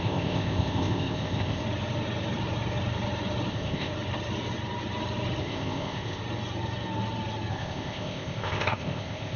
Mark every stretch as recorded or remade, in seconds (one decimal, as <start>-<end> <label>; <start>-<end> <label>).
0.0-1.6 remade; 1.6-3.5 recorded; 3.5-3.9 remade; 3.9-5.4 recorded; 5.4-6.2 remade; 6.2-7.5 recorded; 7.5-9.4 remade